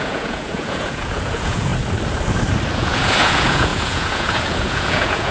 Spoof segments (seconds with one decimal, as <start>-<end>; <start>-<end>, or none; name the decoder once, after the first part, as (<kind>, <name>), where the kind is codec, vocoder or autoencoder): 0.0-1.7 (vocoder, Vocos); 2.7-5.3